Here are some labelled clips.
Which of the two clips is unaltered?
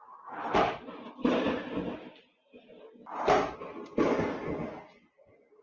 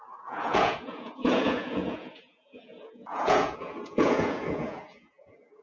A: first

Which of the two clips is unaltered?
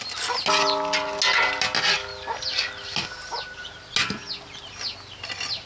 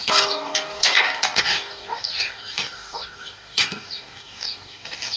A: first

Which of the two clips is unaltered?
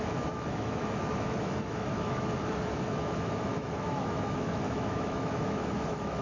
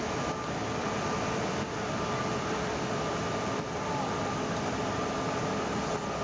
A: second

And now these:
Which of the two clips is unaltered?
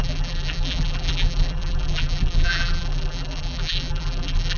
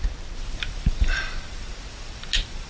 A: second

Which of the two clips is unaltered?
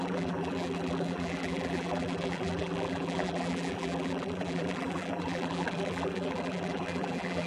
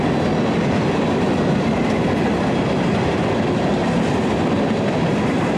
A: second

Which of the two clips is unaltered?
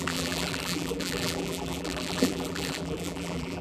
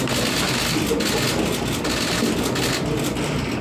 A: second